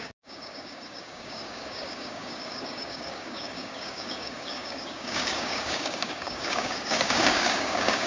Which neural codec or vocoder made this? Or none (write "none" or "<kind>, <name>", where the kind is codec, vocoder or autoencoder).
codec, DAC